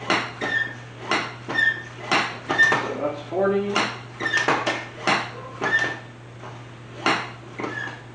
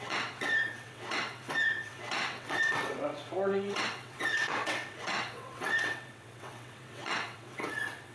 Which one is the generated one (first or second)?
second